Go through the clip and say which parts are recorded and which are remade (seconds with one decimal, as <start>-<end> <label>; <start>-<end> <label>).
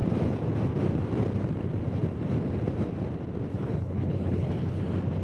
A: 0.0-3.5 recorded; 3.5-4.8 remade; 4.8-5.2 recorded